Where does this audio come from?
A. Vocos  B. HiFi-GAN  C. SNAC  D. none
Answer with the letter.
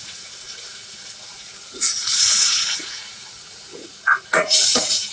A